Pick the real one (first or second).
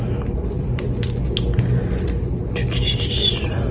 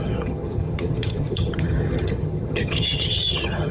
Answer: first